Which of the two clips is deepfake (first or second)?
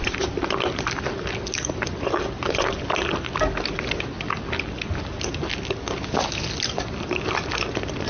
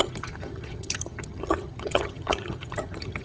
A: second